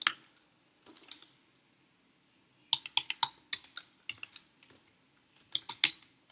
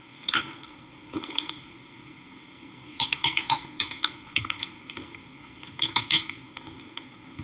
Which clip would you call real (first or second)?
first